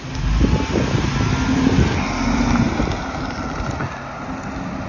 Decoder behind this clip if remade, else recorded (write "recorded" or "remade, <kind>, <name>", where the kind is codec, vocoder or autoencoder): recorded